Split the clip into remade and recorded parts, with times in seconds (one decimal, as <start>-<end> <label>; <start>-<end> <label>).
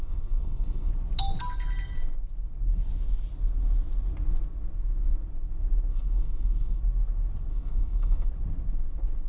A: 0.0-0.9 remade; 0.9-5.9 recorded; 5.9-6.8 remade; 6.8-7.5 recorded; 7.5-8.3 remade; 8.3-9.3 recorded